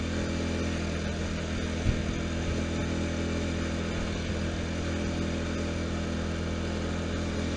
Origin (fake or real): real